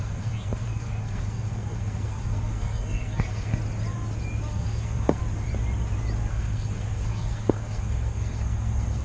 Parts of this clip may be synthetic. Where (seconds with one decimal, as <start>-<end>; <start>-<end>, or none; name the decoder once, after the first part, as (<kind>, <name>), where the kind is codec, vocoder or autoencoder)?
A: 0.0-3.5 (codec, SNAC); 4.5-5.2; 6.3-9.0